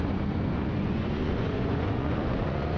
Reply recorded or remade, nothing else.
remade